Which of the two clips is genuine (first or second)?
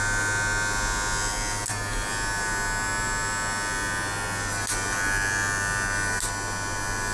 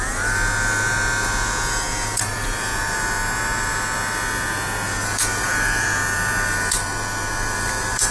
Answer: first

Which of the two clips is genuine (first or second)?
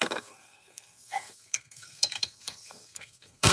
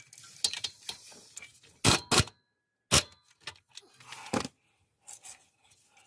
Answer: second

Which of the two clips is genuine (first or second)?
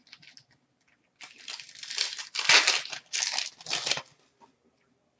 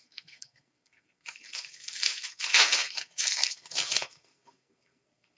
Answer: first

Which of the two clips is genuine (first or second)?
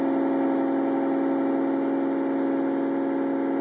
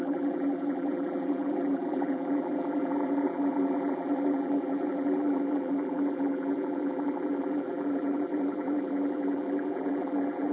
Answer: first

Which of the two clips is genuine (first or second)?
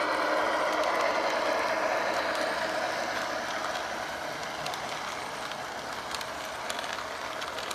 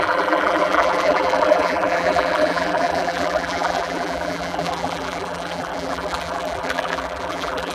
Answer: first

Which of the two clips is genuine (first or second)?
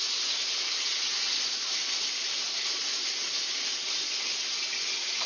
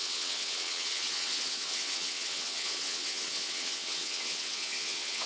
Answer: first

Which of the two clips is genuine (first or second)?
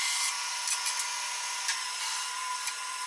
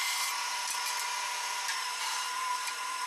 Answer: first